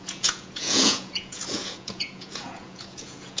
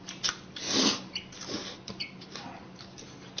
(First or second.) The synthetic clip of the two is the first